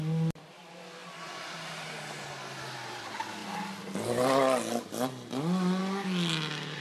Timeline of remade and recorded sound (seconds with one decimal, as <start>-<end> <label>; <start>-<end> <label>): 0.0-6.8 recorded